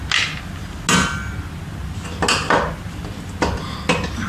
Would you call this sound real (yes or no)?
yes